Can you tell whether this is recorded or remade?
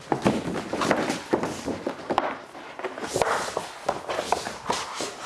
recorded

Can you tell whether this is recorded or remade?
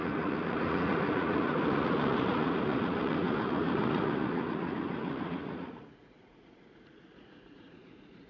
remade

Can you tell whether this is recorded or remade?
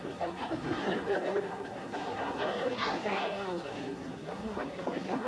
remade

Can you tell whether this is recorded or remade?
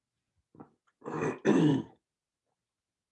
recorded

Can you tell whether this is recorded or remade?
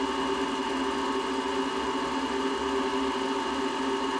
recorded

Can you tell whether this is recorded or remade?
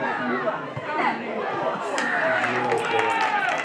recorded